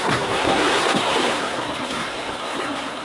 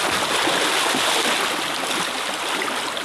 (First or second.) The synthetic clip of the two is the first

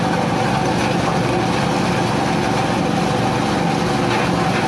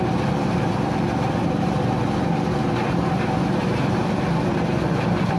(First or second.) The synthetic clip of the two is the second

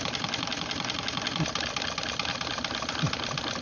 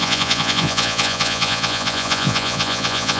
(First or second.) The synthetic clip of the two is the second